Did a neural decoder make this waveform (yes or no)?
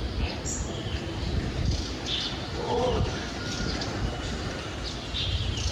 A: no